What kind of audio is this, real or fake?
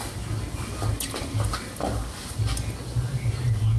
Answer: real